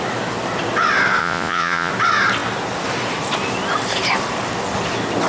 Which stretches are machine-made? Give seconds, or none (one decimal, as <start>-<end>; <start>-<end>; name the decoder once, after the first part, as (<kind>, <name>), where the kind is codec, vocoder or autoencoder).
1.2-1.9 (vocoder, Vocos)